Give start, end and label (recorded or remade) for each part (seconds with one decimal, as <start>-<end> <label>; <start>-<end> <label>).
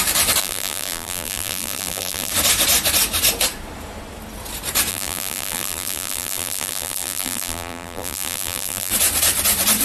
0.0-0.4 recorded; 0.4-2.3 remade; 2.3-4.9 recorded; 4.9-8.9 remade; 8.9-9.8 recorded